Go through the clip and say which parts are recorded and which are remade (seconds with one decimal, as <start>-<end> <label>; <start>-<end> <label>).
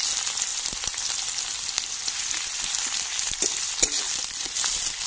0.0-0.5 recorded; 0.5-3.6 remade; 3.6-5.1 recorded